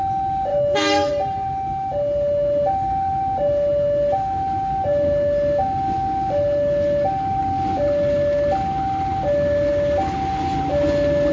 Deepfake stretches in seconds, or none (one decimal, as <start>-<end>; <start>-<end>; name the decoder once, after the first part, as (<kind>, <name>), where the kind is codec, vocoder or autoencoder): 0.5-1.1 (autoencoder, DAC-VAE)